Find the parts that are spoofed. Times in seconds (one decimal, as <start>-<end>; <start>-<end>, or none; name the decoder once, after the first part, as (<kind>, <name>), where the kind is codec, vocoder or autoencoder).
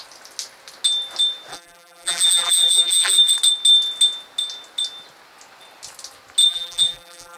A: 1.5-3.3 (vocoder, BigVGAN v2); 6.4-7.4